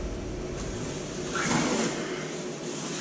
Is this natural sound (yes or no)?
yes